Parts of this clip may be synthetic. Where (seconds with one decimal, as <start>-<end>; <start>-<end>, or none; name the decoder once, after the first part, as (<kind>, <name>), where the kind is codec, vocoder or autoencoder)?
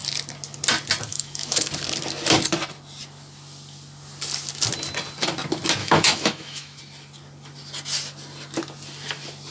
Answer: 1.1-1.7 (autoencoder, DAC-VAE); 5.8-6.8